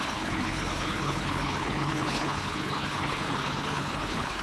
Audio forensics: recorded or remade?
remade